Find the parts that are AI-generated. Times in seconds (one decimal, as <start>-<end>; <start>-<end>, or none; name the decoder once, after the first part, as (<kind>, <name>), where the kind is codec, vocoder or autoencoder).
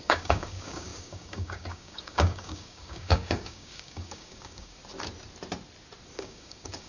0.0-4.8 (codec, DAC); 6.2-6.9